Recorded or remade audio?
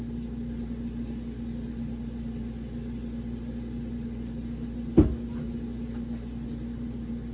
recorded